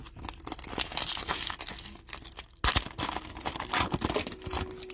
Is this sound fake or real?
real